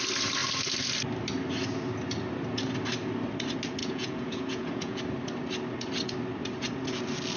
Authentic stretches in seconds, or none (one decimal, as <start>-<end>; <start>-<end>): 0.0-3.8; 5.0-7.4